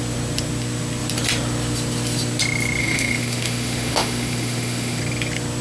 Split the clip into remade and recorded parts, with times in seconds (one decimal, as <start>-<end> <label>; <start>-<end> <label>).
0.0-2.8 recorded; 2.8-5.0 remade; 5.0-5.6 recorded

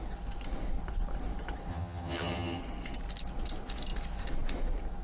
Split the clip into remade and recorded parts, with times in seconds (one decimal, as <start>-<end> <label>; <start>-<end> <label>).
0.0-1.7 recorded; 1.7-2.6 remade; 2.6-5.0 recorded

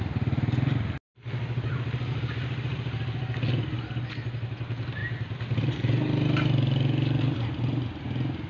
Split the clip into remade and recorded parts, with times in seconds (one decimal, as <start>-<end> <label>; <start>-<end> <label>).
0.0-8.5 recorded

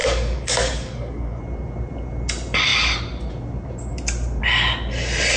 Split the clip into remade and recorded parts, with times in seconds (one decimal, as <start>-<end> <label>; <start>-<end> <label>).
0.0-1.4 remade; 1.4-5.4 recorded

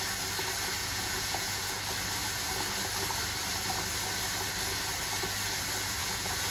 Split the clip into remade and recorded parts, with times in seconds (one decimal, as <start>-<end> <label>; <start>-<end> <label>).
0.0-0.8 recorded; 0.8-1.8 remade; 1.8-6.0 recorded; 6.0-6.5 remade